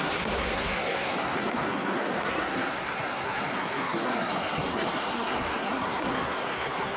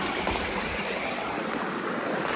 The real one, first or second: second